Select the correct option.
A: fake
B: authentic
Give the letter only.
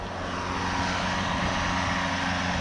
B